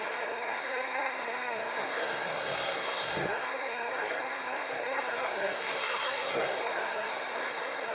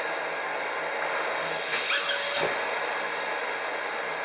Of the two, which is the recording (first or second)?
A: second